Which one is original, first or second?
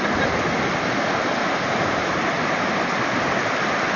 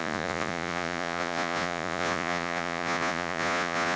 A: first